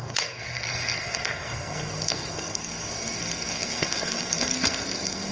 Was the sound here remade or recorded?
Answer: remade